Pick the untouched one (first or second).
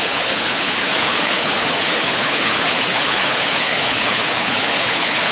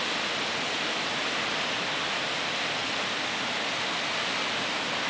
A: second